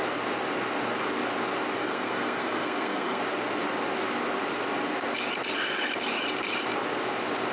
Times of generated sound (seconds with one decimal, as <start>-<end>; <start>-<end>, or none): 1.8-3.2